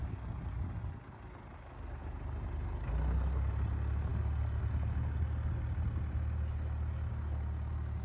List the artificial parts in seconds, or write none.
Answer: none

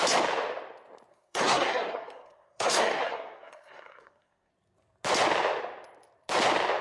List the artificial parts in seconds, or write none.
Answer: 1.1-4.5

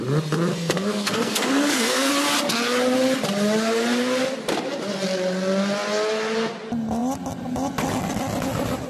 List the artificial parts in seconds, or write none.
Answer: 0.5-2.1

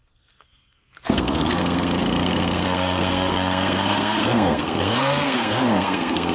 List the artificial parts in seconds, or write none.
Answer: 0.0-6.3

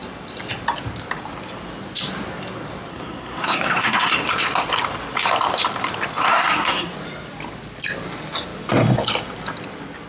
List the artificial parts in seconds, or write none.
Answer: 2.9-4.1; 6.3-6.9

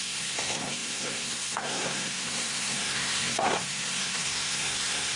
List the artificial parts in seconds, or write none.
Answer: 0.0-5.2

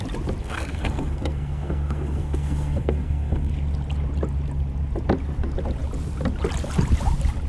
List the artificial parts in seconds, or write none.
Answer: 0.4-3.5

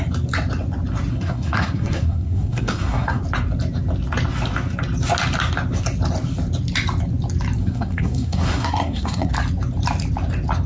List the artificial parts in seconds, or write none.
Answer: 1.1-3.2; 7.6-9.3